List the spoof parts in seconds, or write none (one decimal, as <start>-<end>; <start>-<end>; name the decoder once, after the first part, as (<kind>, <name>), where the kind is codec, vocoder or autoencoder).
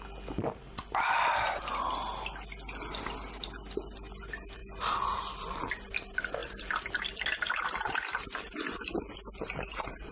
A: none